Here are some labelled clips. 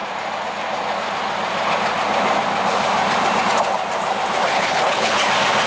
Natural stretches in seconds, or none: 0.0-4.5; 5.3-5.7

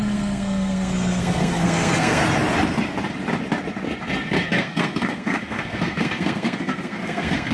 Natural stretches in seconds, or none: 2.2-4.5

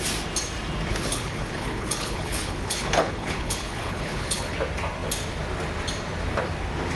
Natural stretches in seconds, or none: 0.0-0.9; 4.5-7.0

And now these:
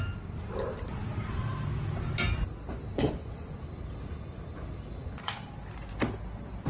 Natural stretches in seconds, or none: 0.0-2.9; 3.6-5.0; 5.5-6.7

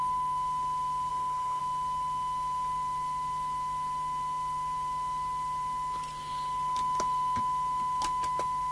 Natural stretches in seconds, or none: 0.0-1.1; 1.6-8.7

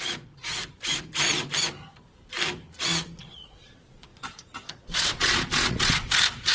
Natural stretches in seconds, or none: 0.6-2.8

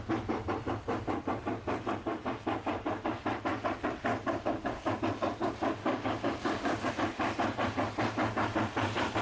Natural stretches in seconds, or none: 0.0-4.1; 5.0-5.8; 6.9-9.2